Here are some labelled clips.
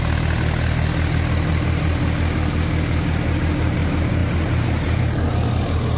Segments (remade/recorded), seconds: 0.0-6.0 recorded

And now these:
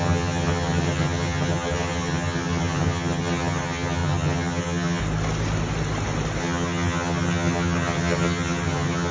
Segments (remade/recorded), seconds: 0.0-5.0 remade; 5.0-6.4 recorded; 6.4-9.1 remade

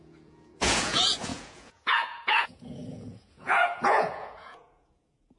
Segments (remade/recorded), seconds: 0.0-5.4 remade

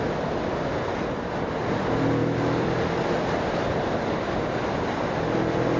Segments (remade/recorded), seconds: 0.0-5.8 recorded

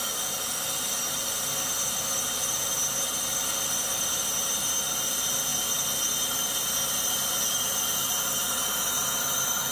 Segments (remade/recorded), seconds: 0.0-9.7 recorded

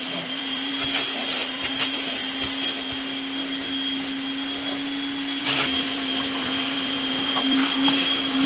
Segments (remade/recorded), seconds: 0.0-0.7 remade; 0.7-1.2 recorded; 1.2-2.2 remade; 2.2-5.4 recorded; 5.4-8.5 remade

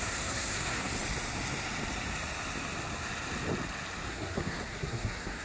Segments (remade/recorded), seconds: 0.0-0.9 remade; 0.9-4.1 recorded; 4.1-5.4 remade

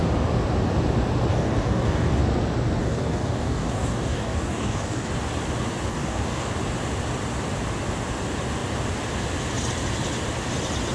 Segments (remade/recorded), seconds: 0.0-1.3 recorded; 1.3-2.2 remade; 2.2-2.8 recorded; 2.8-5.1 remade; 5.1-5.9 recorded; 5.9-6.5 remade; 6.5-10.9 recorded